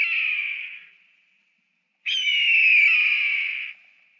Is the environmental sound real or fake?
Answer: real